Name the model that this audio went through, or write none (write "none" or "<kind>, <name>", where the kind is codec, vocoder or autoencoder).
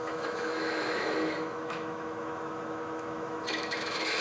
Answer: autoencoder, DAC-VAE